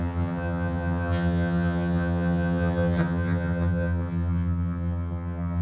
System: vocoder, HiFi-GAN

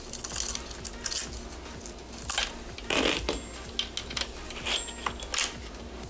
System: none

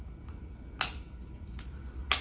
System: none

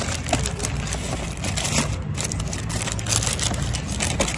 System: none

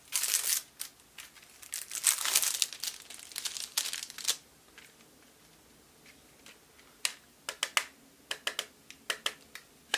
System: none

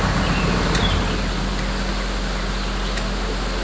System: none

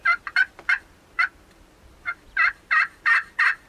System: vocoder, BigVGAN v2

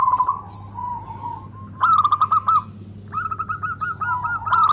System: none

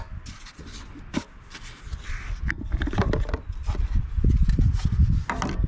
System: none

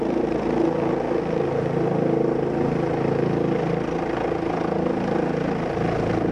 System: none